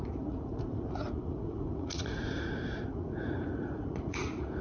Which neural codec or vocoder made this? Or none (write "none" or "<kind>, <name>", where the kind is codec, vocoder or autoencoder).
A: vocoder, Vocos